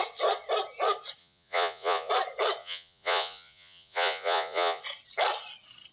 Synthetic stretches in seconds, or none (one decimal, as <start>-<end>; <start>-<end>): 1.2-2.1; 2.6-4.8